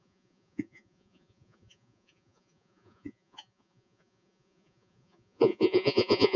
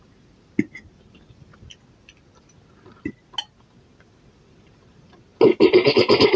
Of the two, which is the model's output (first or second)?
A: first